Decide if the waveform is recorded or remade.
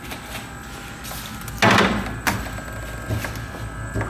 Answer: recorded